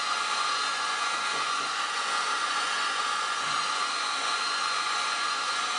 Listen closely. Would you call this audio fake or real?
fake